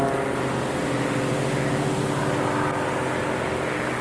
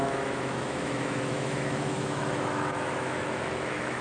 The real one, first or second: first